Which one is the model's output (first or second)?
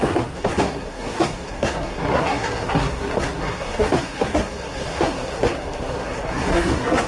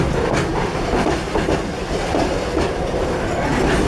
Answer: first